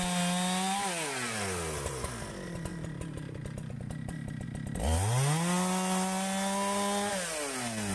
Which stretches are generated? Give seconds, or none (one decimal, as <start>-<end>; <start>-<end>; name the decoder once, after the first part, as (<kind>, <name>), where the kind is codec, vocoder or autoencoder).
none